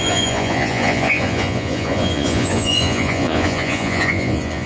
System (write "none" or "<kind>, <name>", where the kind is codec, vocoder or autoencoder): vocoder, Vocos